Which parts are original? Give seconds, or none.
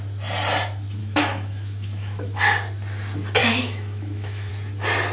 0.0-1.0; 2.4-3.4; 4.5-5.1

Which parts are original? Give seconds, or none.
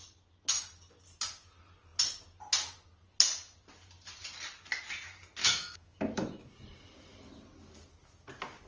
0.0-5.4; 6.5-8.7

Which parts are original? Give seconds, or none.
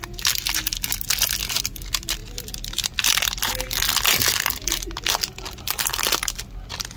0.0-7.0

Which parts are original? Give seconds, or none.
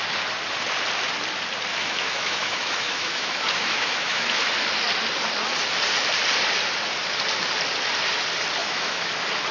0.0-1.7; 4.4-8.6; 9.1-9.5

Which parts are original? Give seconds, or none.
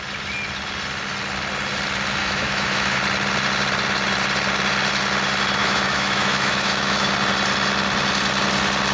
0.0-2.2; 3.0-5.6; 7.1-8.9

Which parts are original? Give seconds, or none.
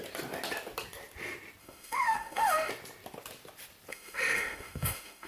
0.0-1.6; 2.7-3.9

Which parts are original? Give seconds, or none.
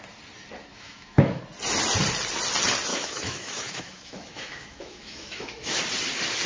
0.0-0.7; 1.4-2.9; 5.8-6.5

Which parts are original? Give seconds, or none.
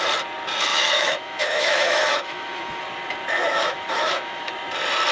0.0-0.7; 2.8-3.4; 4.5-5.1